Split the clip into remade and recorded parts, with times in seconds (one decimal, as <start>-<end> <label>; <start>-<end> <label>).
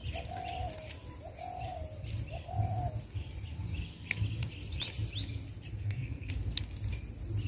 0.0-5.7 recorded; 5.7-6.3 remade; 6.3-7.5 recorded